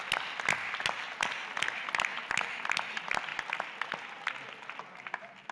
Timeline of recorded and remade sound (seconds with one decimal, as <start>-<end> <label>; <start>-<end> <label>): 0.0-5.5 recorded